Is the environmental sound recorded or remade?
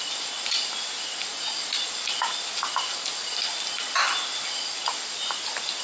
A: recorded